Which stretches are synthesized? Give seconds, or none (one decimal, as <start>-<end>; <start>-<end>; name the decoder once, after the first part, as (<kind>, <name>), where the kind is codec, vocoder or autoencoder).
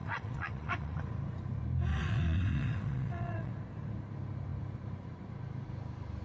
0.0-1.0 (vocoder, WaveNeXt); 1.9-3.5